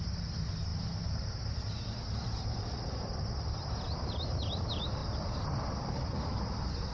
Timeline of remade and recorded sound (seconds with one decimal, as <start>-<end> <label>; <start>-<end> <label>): 0.0-5.0 remade; 5.0-6.4 recorded; 6.4-6.9 remade

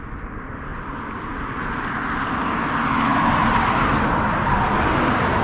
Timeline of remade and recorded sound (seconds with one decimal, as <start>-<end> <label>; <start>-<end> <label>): 0.0-0.7 recorded; 0.7-1.9 remade; 1.9-3.1 recorded; 3.1-4.8 remade; 4.8-5.4 recorded

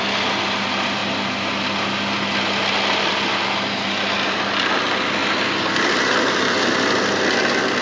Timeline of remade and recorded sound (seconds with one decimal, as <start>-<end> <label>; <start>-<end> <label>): 0.0-5.2 recorded; 5.2-6.6 remade; 6.6-7.8 recorded

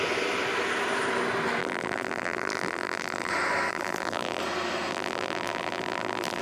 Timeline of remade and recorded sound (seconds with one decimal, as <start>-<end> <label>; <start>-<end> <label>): 0.0-1.6 recorded; 1.6-3.3 remade; 3.3-3.7 recorded; 3.7-4.4 remade; 4.4-4.9 recorded; 4.9-6.4 remade

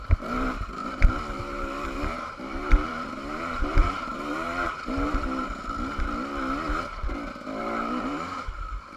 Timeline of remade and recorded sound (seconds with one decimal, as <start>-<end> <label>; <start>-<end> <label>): 0.0-5.6 remade; 5.6-7.6 recorded; 7.6-9.0 remade